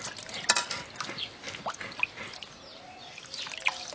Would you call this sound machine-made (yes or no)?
no